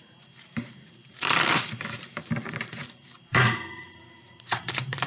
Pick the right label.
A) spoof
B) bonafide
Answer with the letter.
A